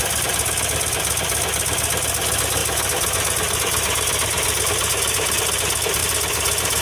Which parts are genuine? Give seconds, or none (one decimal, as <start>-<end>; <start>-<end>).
0.0-2.6; 5.4-6.0

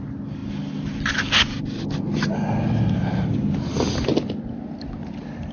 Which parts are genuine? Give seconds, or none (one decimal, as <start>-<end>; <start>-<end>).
0.0-5.5